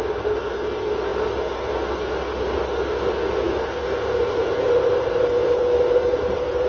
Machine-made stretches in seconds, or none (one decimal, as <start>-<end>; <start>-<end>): none